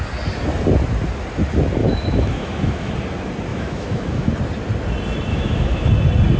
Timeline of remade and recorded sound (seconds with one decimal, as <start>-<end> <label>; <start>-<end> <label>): 0.0-1.8 recorded; 1.8-2.9 remade; 2.9-3.5 recorded; 3.5-4.3 remade; 4.3-5.3 recorded; 5.3-5.9 remade; 5.9-6.4 recorded